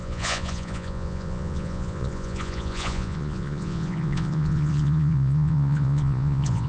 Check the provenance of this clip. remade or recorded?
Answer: remade